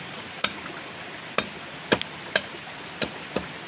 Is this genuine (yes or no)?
yes